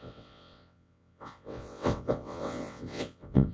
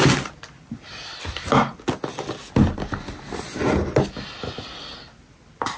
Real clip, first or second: second